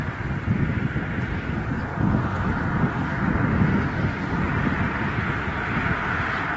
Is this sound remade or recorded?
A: recorded